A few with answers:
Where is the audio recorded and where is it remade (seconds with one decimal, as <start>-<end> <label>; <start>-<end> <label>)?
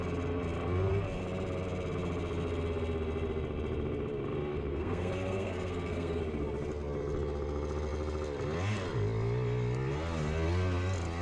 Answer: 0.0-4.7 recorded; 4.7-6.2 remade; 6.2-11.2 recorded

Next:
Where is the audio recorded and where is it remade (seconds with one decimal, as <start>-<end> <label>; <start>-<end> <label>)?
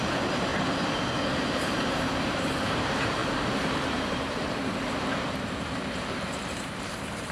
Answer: 0.0-0.5 remade; 0.5-1.3 recorded; 1.3-7.3 remade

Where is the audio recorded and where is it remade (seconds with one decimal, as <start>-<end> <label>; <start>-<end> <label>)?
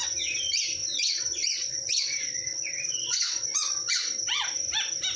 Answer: 0.0-0.8 recorded; 0.8-3.9 remade; 3.9-5.2 recorded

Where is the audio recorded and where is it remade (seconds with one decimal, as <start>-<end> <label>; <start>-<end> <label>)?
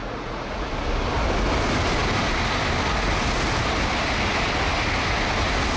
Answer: 0.0-0.7 remade; 0.7-5.8 recorded